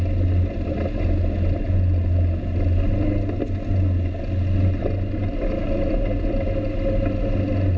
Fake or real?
real